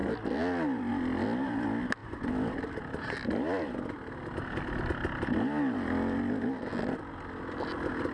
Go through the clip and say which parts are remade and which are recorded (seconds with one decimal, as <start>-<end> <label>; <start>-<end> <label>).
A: 0.0-8.1 recorded